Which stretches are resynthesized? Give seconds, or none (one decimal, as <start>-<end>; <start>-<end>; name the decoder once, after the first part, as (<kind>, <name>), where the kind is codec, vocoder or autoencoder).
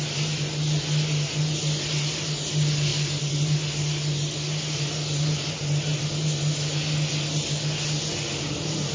none